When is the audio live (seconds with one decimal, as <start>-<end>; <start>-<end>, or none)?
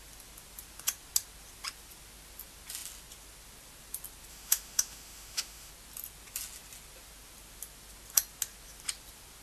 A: 0.0-4.3; 5.7-9.4